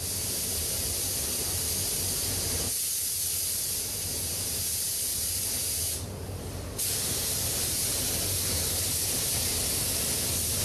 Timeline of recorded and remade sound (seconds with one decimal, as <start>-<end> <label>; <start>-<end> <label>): 0.0-10.6 recorded